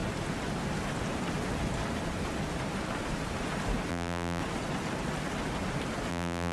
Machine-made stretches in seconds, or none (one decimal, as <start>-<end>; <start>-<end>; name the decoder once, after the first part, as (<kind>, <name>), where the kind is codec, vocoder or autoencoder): 3.9-4.4 (vocoder, BigVGAN v2); 6.1-6.5